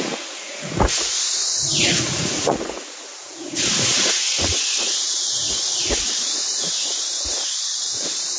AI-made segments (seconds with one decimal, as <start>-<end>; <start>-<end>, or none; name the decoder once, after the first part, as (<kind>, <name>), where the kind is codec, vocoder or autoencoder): 0.0-8.4 (vocoder, Vocos)